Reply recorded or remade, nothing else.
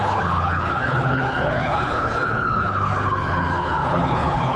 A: remade